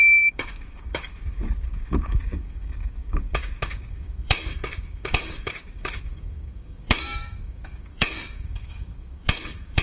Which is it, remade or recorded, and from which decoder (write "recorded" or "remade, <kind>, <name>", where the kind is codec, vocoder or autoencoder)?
remade, codec, DAC